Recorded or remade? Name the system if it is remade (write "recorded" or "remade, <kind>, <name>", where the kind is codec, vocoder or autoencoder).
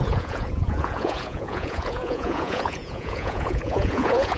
remade, vocoder, Vocos